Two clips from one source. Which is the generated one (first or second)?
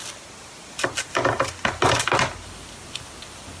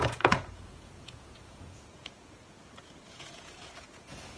second